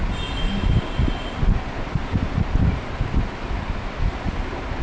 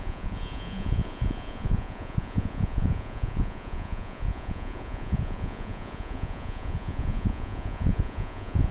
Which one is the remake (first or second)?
second